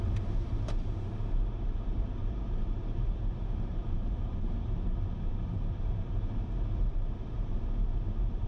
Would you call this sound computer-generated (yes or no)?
yes